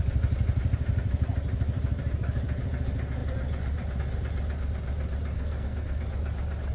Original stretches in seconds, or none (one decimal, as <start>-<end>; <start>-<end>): 0.0-5.3; 6.0-6.7